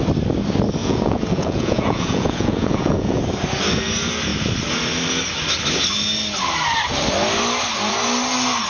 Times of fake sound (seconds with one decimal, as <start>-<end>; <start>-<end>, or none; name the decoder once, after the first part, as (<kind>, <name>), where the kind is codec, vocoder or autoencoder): 0.8-3.2 (vocoder, Vocos)